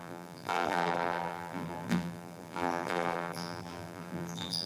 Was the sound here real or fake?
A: fake